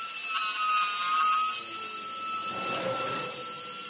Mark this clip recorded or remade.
recorded